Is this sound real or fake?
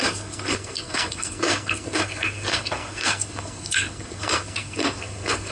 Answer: fake